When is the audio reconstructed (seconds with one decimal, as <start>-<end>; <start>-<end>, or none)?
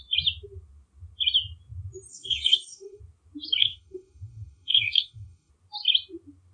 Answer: 2.1-3.0; 3.6-5.5